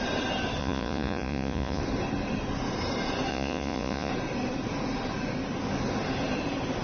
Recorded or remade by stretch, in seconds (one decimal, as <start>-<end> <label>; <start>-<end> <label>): 0.0-0.6 recorded; 0.6-1.8 remade; 1.8-3.3 recorded; 3.3-4.1 remade; 4.1-6.8 recorded